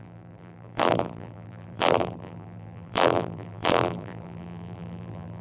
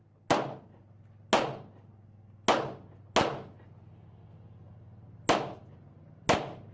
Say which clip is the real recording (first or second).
second